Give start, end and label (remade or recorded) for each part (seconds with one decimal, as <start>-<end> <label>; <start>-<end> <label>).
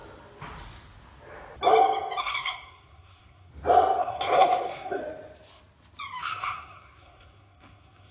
0.0-2.2 recorded; 2.2-3.5 remade; 3.5-4.0 recorded; 4.0-5.0 remade; 5.0-6.2 recorded; 6.2-8.1 remade